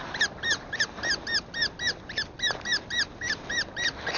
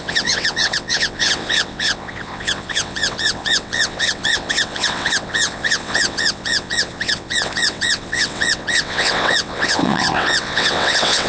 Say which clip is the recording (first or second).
first